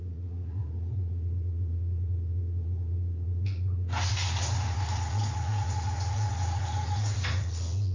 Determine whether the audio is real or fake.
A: fake